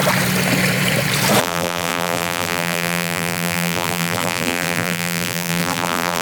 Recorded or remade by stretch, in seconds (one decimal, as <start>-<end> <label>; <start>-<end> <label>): 0.0-1.4 recorded; 1.4-6.2 remade